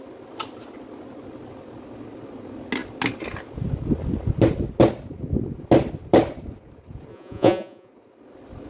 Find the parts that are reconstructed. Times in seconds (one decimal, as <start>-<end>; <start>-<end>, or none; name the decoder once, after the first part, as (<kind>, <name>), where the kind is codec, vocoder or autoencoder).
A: 7.1-7.9 (vocoder, Vocos)